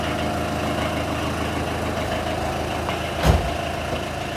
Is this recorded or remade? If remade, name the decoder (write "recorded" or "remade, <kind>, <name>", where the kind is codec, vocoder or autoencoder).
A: recorded